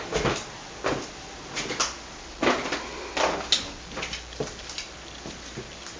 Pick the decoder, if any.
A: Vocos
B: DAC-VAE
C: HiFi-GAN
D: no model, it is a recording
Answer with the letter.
D